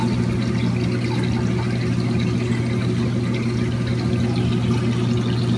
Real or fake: real